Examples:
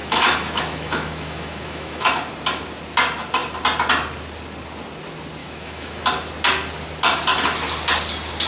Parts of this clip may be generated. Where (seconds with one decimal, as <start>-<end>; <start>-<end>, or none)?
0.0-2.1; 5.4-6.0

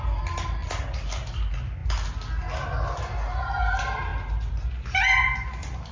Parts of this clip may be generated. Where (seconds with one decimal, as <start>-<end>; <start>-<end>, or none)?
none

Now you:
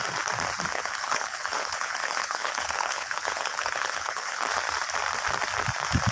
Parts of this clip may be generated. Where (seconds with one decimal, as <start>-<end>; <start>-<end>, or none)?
0.7-4.4